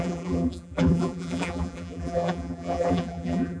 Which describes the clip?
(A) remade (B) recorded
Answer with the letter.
A